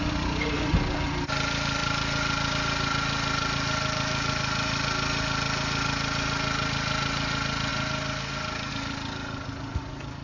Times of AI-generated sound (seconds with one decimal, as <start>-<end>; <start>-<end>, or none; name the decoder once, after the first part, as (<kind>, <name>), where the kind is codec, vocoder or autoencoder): 1.8-2.5 (vocoder, BigVGAN v2)